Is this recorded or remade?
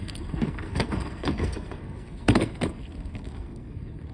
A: remade